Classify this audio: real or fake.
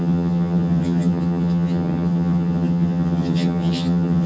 fake